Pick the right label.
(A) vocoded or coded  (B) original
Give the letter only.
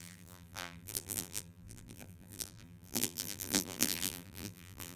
A